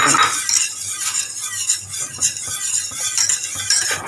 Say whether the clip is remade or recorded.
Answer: recorded